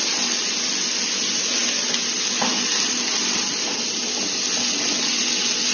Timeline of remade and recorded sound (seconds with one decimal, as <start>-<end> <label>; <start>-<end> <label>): 0.0-5.7 recorded